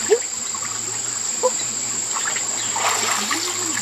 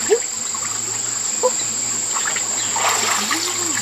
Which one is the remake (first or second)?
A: first